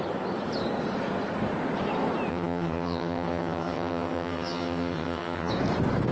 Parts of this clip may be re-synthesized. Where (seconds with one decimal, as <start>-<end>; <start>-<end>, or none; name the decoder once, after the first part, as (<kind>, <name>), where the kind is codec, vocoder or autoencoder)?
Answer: 2.3-5.5 (vocoder, HiFi-GAN)